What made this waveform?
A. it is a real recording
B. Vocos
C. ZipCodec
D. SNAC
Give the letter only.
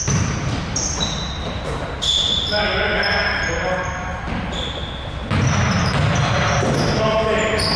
A